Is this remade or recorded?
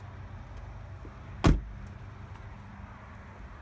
recorded